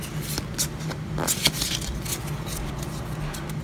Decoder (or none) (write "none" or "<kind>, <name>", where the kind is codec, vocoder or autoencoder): none